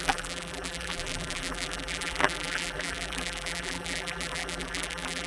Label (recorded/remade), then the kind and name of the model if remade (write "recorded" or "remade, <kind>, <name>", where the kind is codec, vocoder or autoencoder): remade, vocoder, BigVGAN v2